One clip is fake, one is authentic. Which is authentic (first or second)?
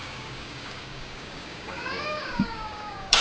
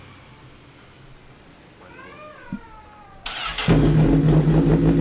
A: second